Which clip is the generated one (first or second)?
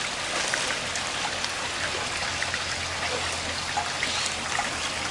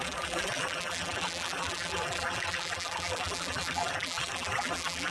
second